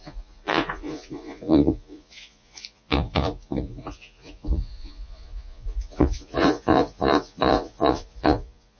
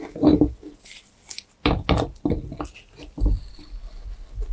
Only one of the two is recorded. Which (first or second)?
second